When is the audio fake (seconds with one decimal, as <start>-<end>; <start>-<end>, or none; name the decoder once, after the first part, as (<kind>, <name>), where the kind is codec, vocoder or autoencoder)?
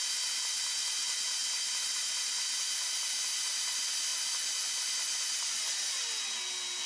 none